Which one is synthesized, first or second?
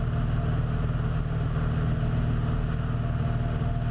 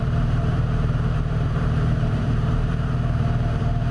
second